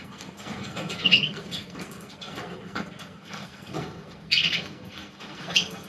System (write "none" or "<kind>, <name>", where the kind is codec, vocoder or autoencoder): codec, SNAC